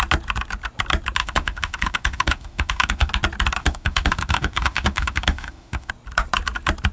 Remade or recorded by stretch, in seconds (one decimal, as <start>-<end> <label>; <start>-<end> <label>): 0.0-1.2 recorded; 1.2-3.1 remade; 3.1-3.6 recorded; 3.6-5.9 remade; 5.9-6.9 recorded